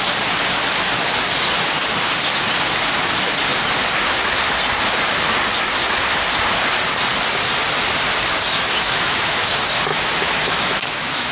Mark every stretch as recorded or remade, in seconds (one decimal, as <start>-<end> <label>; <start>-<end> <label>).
0.0-8.5 recorded; 8.5-9.4 remade; 9.4-9.9 recorded; 9.9-11.3 remade